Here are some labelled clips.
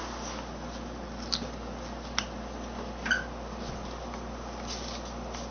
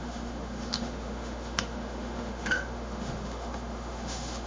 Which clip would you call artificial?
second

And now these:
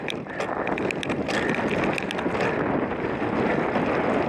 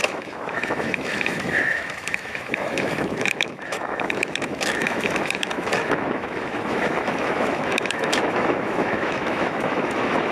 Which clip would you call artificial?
second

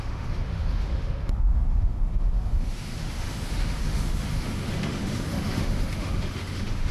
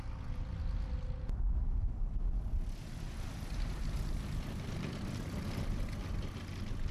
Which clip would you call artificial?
first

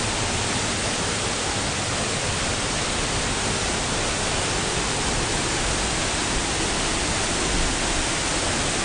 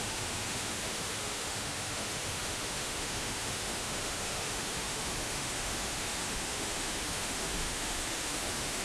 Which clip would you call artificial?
second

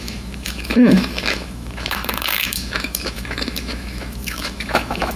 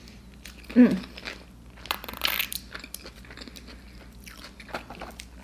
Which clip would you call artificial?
first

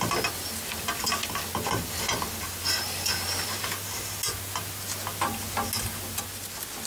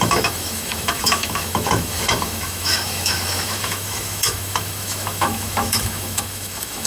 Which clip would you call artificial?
second